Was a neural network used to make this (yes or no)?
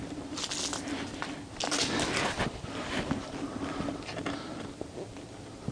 no